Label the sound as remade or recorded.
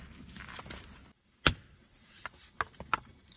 recorded